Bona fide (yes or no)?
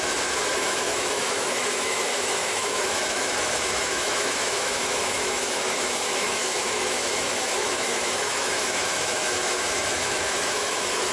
no